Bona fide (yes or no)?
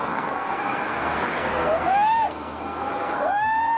no